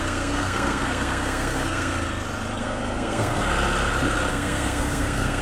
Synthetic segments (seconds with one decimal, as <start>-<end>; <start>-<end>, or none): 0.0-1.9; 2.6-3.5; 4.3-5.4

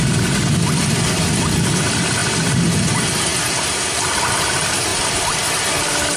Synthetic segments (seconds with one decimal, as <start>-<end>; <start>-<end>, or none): 2.2-2.9

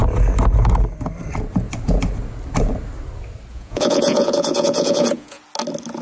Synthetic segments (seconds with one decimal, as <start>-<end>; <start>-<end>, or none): 3.5-5.4

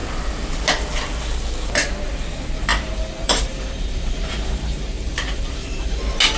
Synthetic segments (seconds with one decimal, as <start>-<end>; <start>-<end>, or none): 2.7-5.9

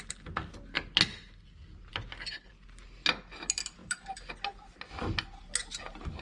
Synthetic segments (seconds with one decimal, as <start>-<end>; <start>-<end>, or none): none